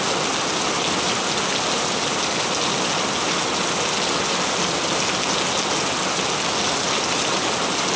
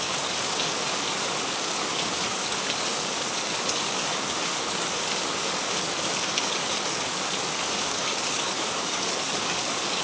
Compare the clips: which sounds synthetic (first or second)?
second